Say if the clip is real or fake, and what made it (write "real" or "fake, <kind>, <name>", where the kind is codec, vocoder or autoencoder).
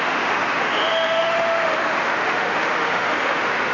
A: fake, autoencoder, DAC-VAE